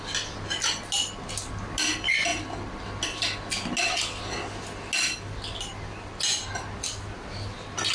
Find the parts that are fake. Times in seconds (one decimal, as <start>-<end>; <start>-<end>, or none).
none